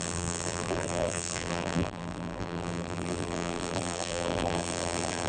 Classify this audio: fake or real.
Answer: fake